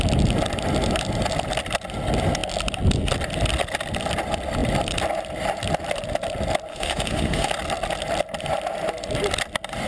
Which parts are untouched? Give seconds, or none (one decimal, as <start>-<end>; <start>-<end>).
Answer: 0.0-6.7; 7.5-9.9